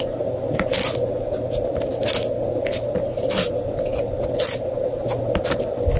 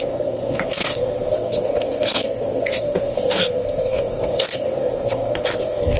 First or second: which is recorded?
first